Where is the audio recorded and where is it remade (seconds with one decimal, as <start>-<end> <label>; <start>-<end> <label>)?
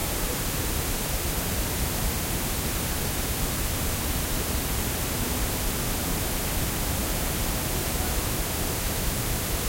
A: 0.0-5.1 remade; 5.1-7.0 recorded; 7.0-8.2 remade; 8.2-9.7 recorded